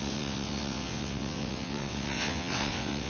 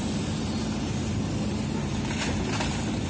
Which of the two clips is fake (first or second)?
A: first